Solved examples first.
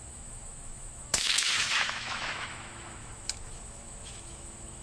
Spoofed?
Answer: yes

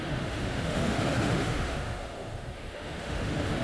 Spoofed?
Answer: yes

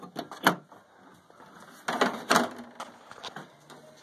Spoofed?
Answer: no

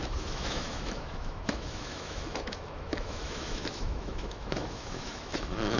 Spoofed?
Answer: yes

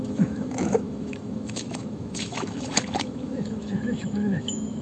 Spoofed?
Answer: yes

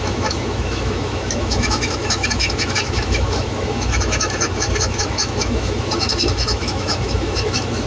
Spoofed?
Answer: yes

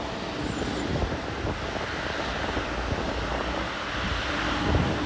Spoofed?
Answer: no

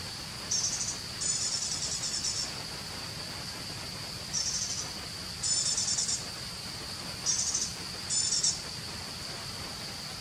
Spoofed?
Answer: no